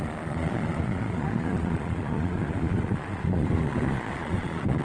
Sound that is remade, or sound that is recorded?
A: remade